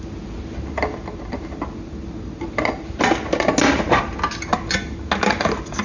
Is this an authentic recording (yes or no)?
yes